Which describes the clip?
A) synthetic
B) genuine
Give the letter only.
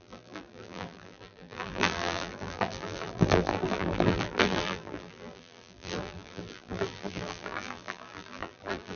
A